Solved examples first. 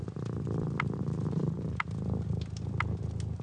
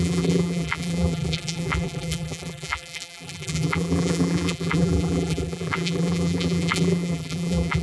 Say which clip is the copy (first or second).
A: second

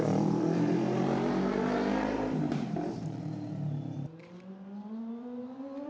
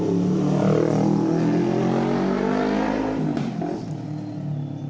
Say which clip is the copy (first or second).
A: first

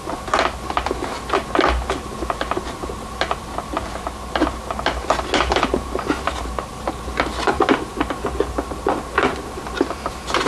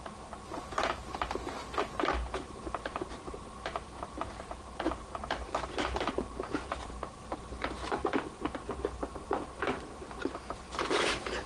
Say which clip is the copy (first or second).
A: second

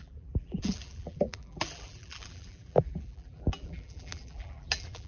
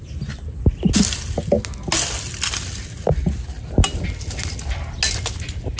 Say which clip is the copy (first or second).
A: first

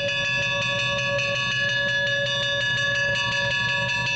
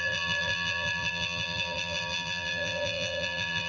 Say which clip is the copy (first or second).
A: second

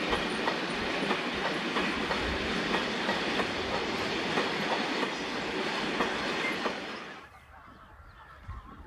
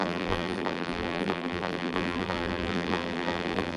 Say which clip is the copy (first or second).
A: second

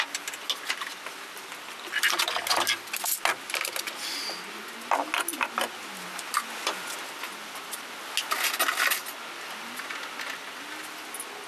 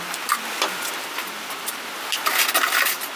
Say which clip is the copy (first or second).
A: second